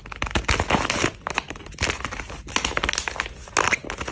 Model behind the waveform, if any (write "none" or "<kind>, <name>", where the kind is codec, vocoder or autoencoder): none